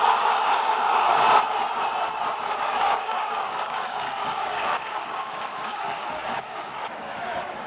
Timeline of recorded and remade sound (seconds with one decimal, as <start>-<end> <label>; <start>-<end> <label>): 0.0-1.1 remade; 1.1-2.6 recorded; 2.6-7.7 remade